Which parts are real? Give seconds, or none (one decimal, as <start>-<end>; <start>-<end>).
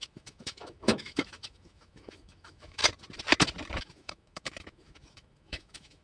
2.8-3.8